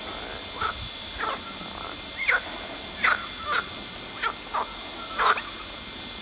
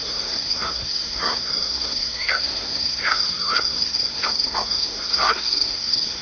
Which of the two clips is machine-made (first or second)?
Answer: second